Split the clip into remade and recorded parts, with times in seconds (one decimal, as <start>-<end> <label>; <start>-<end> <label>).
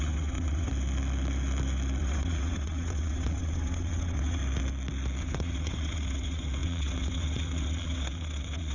0.0-0.7 remade; 0.7-2.0 recorded; 2.0-4.4 remade; 4.4-5.2 recorded; 5.2-8.7 remade